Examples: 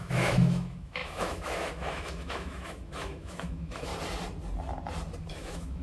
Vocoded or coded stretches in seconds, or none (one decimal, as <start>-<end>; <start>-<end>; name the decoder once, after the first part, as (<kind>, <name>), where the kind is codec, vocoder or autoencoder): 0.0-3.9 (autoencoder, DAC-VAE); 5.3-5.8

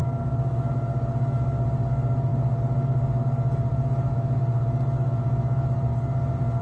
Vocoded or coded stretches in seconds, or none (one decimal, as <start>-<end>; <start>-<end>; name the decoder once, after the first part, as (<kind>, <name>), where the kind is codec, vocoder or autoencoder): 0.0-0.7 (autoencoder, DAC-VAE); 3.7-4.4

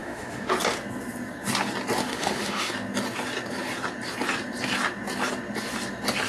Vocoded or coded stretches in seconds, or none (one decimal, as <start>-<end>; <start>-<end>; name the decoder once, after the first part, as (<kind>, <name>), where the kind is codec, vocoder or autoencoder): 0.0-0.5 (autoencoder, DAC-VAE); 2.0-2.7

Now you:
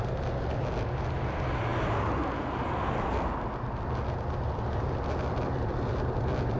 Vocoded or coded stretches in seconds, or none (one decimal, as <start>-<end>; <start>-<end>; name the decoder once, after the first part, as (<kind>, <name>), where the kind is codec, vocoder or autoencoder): none

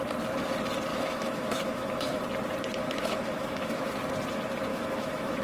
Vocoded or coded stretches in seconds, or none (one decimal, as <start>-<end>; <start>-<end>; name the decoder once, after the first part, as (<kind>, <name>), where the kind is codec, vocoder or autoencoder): 0.9-2.2 (autoencoder, DAC-VAE); 2.8-3.9; 4.7-5.4

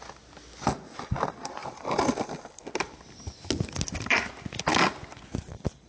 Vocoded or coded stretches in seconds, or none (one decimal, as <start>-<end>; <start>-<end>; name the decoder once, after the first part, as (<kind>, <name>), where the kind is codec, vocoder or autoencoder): none

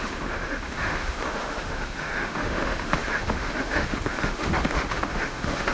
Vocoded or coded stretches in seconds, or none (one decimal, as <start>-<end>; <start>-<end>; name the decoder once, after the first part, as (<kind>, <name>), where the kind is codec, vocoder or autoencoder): 0.0-5.7 (autoencoder, DAC-VAE)